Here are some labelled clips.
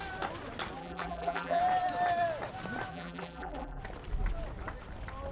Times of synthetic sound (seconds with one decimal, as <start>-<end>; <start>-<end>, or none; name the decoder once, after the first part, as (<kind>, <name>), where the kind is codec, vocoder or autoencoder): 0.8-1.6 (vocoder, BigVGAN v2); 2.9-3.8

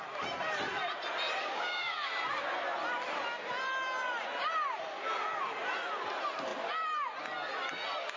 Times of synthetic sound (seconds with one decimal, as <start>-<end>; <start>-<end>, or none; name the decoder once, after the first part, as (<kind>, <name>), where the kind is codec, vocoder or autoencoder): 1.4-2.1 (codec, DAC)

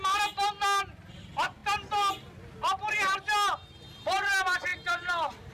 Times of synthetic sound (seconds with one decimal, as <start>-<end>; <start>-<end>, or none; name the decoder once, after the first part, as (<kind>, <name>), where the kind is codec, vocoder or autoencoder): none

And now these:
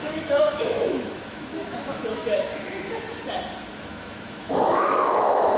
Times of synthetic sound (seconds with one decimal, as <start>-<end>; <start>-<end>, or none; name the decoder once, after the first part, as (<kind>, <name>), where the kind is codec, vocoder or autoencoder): 0.0-2.5 (autoencoder, DAC-VAE); 3.8-5.6

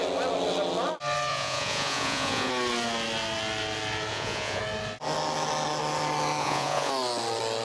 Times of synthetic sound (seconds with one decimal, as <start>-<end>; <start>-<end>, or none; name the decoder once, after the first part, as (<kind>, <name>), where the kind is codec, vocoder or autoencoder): 1.3-2.5 (vocoder, Vocos); 4.1-4.6; 6.4-6.9

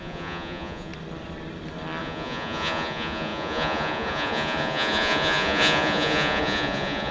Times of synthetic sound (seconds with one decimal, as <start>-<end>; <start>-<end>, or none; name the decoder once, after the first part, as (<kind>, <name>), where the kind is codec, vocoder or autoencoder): 0.0-0.9 (vocoder, Vocos); 2.0-7.1